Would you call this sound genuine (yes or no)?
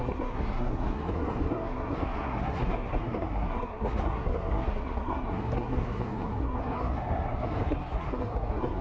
no